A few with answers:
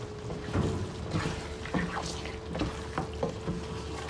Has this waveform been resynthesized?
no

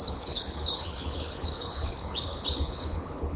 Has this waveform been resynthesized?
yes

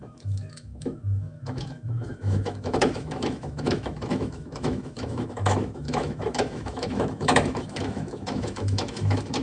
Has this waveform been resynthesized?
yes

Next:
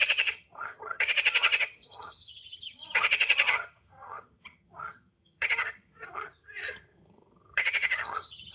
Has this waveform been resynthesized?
yes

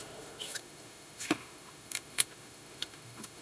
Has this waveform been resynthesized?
yes